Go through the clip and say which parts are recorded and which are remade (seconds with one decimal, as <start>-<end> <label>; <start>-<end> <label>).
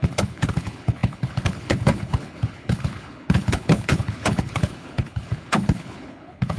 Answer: 0.0-6.6 remade